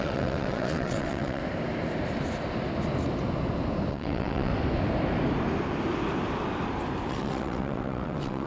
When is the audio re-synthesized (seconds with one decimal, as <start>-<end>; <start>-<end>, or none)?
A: 0.0-1.4; 3.9-4.5; 7.1-8.5